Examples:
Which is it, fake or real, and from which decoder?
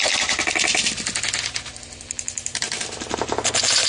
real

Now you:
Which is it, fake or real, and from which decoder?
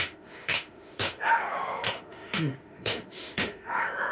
fake, autoencoder, DAC-VAE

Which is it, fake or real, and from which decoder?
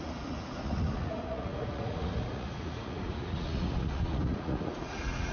fake, vocoder, Vocos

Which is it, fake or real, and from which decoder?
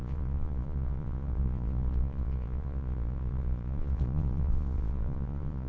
fake, vocoder, Vocos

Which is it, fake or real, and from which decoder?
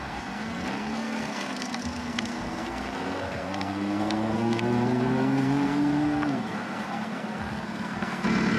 fake, codec, SNAC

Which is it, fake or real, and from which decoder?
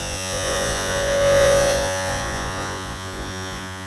fake, vocoder, Vocos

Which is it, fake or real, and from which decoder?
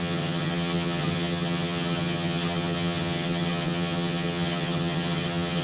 fake, vocoder, HiFi-GAN